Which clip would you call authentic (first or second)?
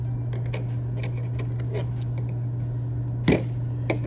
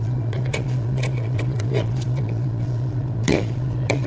first